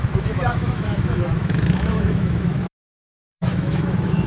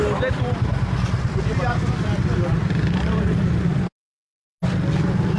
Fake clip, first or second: first